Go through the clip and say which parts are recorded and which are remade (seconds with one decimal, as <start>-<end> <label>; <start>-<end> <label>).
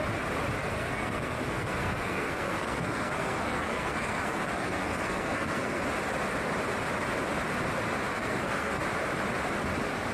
0.0-0.6 recorded; 0.6-5.8 remade; 5.8-8.1 recorded; 8.1-8.8 remade; 8.8-10.1 recorded